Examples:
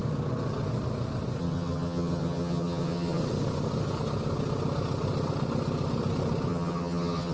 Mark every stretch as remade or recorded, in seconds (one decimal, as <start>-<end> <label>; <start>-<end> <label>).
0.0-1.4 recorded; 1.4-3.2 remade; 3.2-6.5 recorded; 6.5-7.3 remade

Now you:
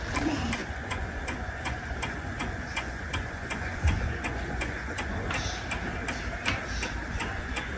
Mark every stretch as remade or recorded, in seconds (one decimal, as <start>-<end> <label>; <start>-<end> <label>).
0.0-0.6 recorded; 0.6-5.3 remade; 5.3-7.1 recorded; 7.1-7.8 remade

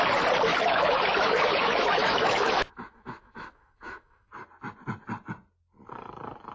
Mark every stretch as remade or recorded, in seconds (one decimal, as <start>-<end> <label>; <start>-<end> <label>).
0.0-0.5 recorded; 0.5-4.3 remade; 4.3-6.5 recorded

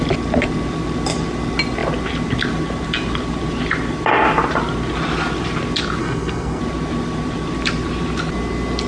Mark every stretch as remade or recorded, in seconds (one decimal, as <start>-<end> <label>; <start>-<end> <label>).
0.0-6.0 recorded; 6.0-6.6 remade; 6.6-8.9 recorded

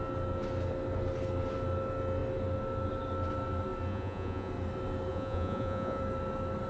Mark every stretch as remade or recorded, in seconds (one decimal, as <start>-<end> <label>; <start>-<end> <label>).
0.0-3.9 recorded; 3.9-4.5 remade; 4.5-5.1 recorded; 5.1-6.0 remade; 6.0-6.7 recorded

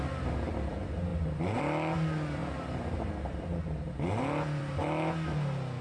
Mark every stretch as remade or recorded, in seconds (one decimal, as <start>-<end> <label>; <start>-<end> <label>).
0.0-5.8 recorded

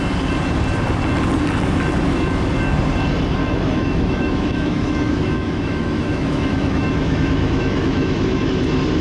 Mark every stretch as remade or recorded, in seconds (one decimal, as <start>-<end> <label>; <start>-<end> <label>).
0.0-3.4 recorded; 3.4-8.5 remade; 8.5-9.0 recorded

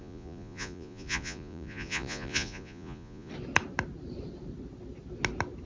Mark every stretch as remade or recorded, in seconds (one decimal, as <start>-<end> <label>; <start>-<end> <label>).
0.0-3.3 remade; 3.3-5.7 recorded